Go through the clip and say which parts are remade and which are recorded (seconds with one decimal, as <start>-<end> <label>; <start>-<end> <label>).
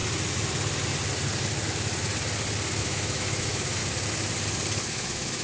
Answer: 0.0-2.8 recorded; 2.8-3.8 remade; 3.8-4.9 recorded; 4.9-5.4 remade